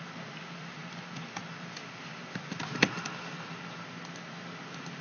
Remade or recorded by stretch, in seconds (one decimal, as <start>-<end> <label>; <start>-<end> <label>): 0.0-5.0 recorded